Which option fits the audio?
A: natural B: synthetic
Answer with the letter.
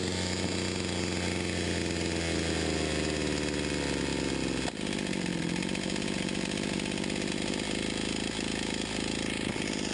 A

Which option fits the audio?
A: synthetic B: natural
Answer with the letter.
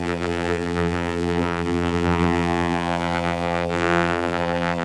A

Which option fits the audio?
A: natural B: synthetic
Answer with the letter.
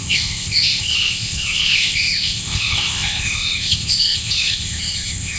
B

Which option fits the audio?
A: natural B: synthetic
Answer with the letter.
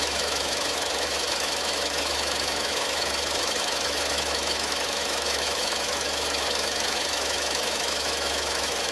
B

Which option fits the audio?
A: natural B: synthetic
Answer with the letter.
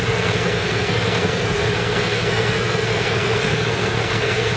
B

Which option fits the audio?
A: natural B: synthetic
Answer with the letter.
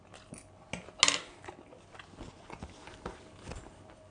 A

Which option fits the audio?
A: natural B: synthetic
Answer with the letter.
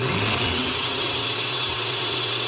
B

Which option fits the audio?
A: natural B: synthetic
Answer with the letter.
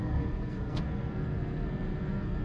B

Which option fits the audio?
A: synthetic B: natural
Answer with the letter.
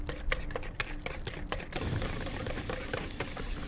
B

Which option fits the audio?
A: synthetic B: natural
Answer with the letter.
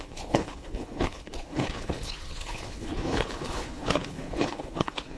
A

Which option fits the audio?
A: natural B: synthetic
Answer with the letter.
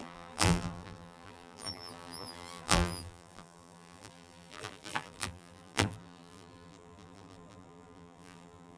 B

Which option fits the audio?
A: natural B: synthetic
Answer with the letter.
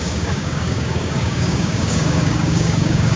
B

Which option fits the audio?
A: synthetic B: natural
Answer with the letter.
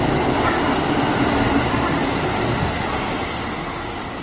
B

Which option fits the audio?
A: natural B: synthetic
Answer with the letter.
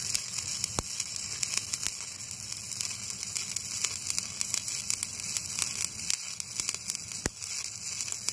A